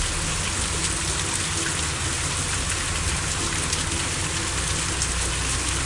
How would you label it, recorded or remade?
recorded